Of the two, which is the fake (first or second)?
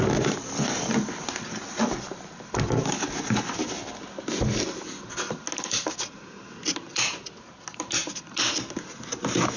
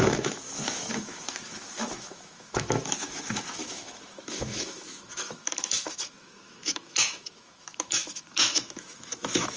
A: second